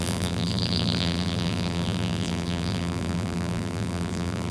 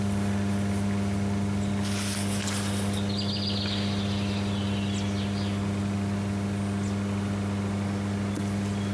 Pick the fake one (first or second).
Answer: first